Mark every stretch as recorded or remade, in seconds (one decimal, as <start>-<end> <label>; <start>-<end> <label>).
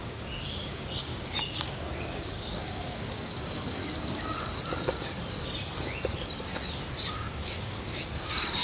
0.0-3.8 remade; 3.8-7.1 recorded; 7.1-8.6 remade